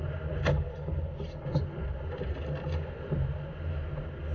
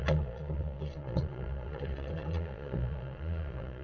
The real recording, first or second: first